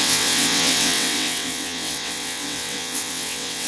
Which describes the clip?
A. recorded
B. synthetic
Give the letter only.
B